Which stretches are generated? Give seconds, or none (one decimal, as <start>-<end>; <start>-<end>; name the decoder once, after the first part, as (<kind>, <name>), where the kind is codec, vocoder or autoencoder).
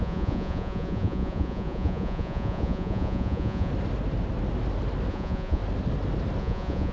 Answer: 0.0-3.7 (vocoder, Vocos); 5.1-5.6; 6.4-6.9